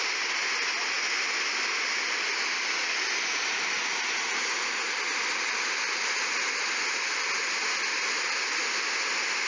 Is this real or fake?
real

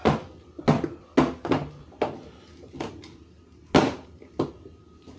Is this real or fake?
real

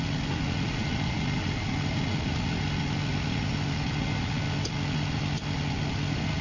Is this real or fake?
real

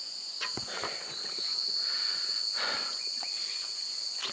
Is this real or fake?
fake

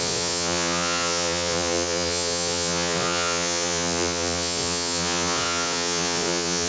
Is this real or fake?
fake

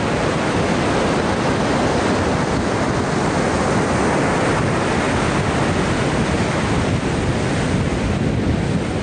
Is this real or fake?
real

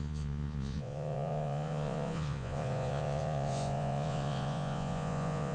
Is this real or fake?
fake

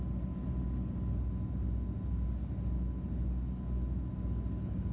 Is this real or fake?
real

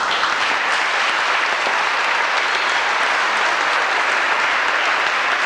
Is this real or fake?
real